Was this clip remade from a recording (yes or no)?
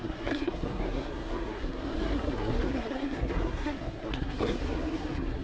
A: yes